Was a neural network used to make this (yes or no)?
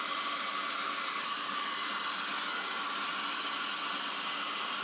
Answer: no